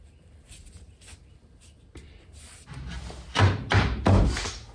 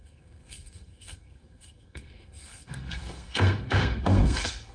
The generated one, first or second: second